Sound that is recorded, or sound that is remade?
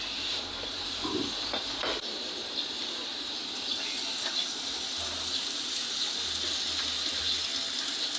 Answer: recorded